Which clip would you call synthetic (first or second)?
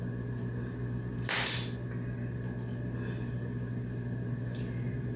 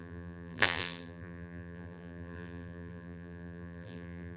second